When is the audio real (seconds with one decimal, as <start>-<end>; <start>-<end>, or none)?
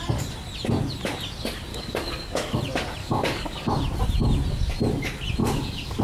0.0-1.7; 2.6-3.0; 3.7-5.4